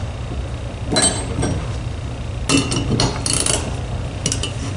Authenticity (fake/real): real